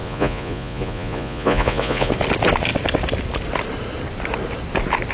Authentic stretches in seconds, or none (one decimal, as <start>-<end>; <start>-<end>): 2.1-5.1